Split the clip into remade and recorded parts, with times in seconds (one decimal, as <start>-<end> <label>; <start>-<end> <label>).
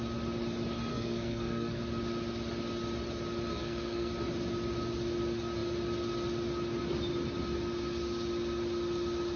0.0-0.9 recorded; 0.9-1.8 remade; 1.8-3.5 recorded; 3.5-4.1 remade; 4.1-9.4 recorded